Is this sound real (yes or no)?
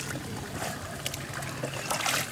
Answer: yes